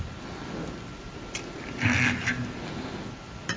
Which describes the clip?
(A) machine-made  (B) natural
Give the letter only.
B